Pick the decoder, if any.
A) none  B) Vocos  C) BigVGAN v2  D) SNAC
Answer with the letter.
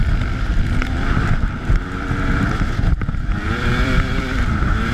C